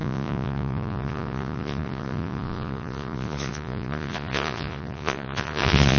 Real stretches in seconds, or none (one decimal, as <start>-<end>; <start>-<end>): none